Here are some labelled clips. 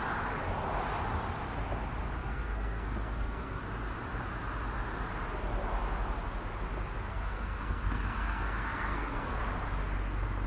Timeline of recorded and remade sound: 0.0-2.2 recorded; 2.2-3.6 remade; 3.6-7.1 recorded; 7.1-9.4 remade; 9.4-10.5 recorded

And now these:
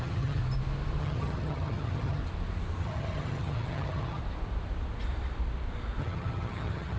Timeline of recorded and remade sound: 0.0-0.4 remade; 0.4-1.0 recorded; 1.0-2.2 remade; 2.2-2.8 recorded; 2.8-4.2 remade; 4.2-6.0 recorded; 6.0-7.0 remade

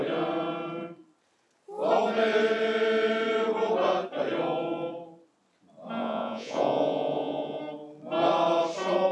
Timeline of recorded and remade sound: 0.0-6.0 recorded; 6.0-7.6 remade; 7.6-9.1 recorded